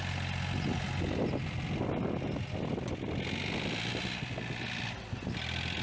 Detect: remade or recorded recorded